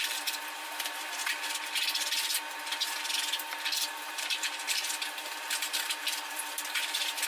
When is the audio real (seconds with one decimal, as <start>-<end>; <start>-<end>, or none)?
1.2-4.1